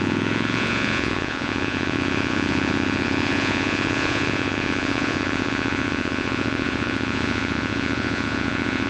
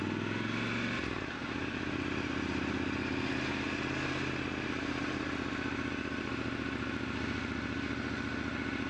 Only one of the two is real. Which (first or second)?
second